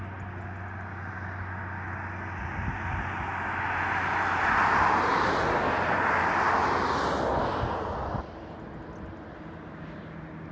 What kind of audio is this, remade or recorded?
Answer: recorded